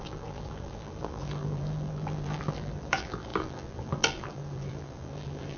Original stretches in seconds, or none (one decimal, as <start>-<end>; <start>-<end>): none